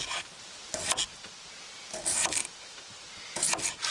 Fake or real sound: real